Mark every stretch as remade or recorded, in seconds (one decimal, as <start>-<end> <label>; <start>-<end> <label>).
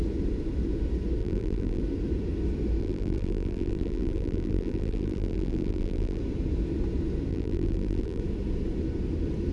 0.0-1.2 recorded; 1.2-1.8 remade; 1.8-2.8 recorded; 2.8-6.2 remade; 6.2-7.3 recorded; 7.3-8.2 remade; 8.2-9.5 recorded